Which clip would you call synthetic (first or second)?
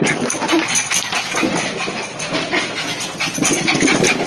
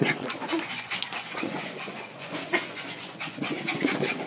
second